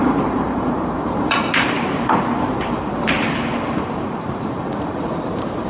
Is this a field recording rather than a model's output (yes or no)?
no